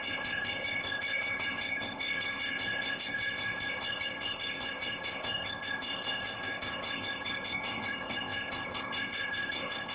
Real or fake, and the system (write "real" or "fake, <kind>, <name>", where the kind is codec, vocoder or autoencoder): fake, codec, ZipCodec